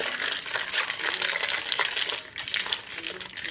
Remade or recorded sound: recorded